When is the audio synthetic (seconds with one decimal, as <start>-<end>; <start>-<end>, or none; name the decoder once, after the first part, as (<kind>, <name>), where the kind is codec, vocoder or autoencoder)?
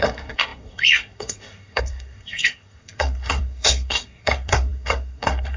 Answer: 0.0-5.6 (codec, SNAC)